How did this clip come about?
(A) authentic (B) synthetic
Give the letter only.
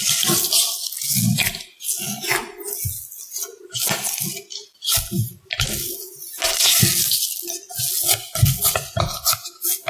A